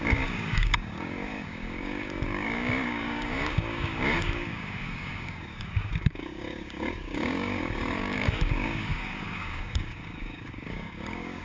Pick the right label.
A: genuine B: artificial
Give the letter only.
B